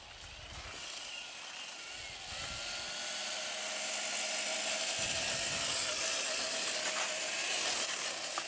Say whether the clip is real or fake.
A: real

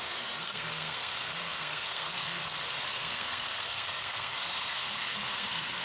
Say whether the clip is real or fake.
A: fake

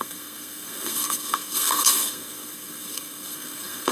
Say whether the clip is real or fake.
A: fake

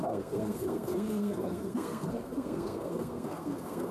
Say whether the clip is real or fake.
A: fake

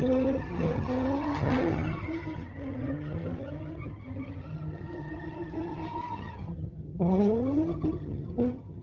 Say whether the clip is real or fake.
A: fake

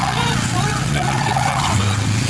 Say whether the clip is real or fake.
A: fake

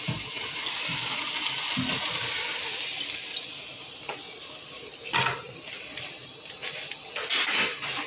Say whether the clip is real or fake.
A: real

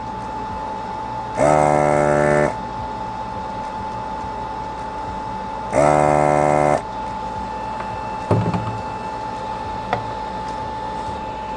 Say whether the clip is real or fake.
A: real